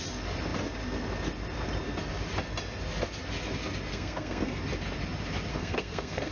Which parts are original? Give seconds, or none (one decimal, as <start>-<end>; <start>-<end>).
0.0-3.9; 4.6-5.5